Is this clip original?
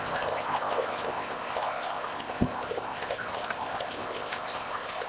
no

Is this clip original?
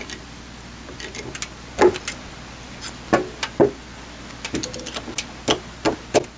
yes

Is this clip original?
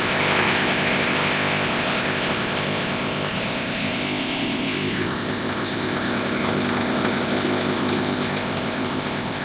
no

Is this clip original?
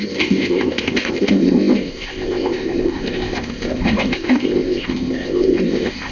no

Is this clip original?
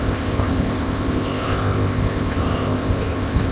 no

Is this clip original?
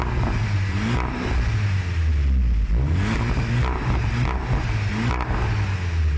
yes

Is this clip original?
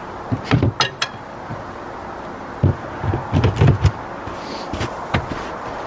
yes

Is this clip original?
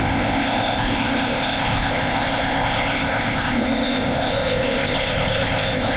no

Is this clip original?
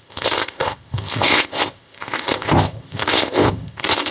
no